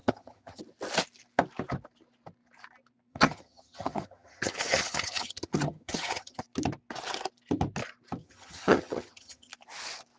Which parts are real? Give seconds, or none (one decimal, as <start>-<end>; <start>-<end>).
0.6-3.1; 6.4-8.2; 9.5-10.2